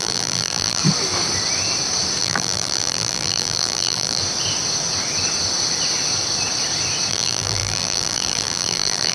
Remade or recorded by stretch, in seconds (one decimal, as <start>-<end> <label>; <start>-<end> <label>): 0.0-0.8 remade; 0.8-2.2 recorded; 2.2-4.2 remade; 4.2-7.1 recorded; 7.1-9.1 remade